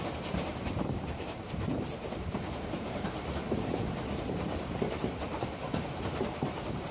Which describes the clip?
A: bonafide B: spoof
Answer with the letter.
B